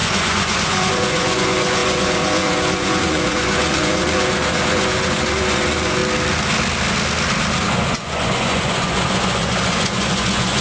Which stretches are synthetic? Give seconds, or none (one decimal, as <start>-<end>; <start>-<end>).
0.0-6.0; 7.6-10.6